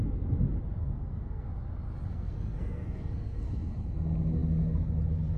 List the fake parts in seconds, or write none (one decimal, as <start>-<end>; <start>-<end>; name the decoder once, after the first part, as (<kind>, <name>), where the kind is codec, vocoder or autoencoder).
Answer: 0.8-1.5 (codec, SNAC); 2.1-3.7